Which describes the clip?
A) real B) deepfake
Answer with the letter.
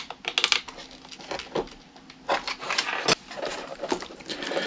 A